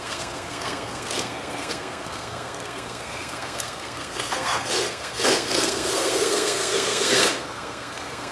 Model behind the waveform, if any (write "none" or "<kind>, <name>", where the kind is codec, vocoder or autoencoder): codec, SNAC